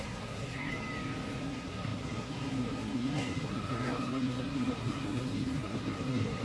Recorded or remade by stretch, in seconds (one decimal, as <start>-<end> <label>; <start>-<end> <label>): 0.0-0.7 remade; 0.7-1.4 recorded; 1.4-6.4 remade